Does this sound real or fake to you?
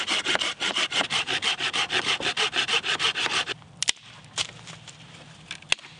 real